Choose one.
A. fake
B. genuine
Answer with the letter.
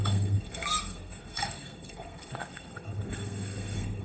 A